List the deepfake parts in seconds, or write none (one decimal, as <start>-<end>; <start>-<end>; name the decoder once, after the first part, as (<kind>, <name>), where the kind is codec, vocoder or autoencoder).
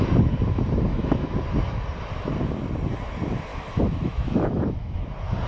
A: 0.9-1.4 (autoencoder, DAC-VAE); 3.5-5.1